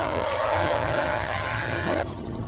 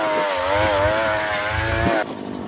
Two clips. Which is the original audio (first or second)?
second